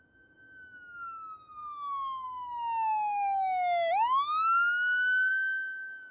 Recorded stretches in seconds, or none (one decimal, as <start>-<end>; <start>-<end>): 0.0-6.1